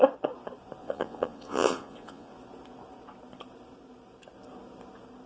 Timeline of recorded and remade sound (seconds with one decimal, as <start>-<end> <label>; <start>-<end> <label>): 0.0-0.8 recorded; 0.8-2.3 remade; 2.3-5.3 recorded